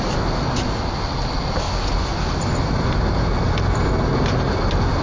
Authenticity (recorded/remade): recorded